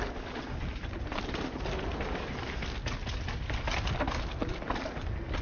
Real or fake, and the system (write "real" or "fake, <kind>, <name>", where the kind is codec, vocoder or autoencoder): real